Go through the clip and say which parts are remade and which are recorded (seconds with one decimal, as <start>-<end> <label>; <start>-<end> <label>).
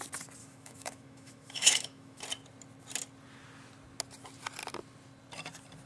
0.0-0.4 recorded; 0.4-2.2 remade; 2.2-5.9 recorded